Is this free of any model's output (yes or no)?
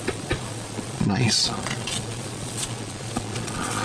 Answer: no